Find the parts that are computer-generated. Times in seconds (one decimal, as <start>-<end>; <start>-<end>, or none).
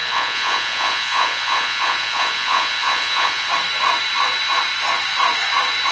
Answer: 0.0-3.5